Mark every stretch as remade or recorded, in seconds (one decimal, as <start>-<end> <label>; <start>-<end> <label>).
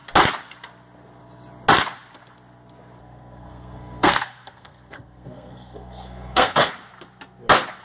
0.0-3.0 recorded; 3.0-6.7 remade; 6.7-7.8 recorded